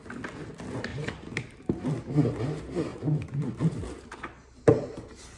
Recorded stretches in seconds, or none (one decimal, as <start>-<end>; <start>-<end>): 0.0-0.9; 1.4-5.4